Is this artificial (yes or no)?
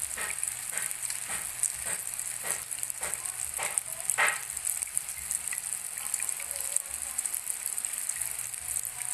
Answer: no